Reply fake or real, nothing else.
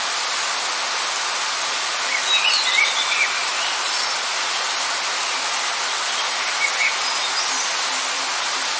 real